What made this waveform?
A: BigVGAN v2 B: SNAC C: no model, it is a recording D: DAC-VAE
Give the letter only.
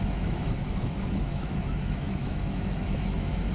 D